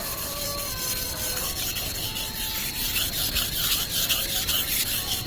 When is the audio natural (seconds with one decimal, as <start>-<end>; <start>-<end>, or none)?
none